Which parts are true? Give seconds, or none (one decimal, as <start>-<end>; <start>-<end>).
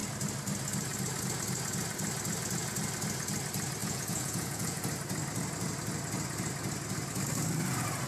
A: 0.0-3.8; 4.8-8.1